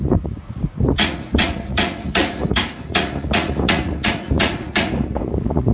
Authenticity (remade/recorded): remade